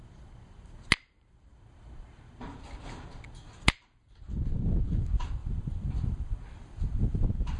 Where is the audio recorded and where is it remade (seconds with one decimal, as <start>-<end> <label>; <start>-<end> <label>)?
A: 0.0-5.4 recorded; 5.4-7.6 remade